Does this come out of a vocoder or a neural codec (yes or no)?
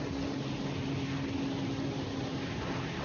no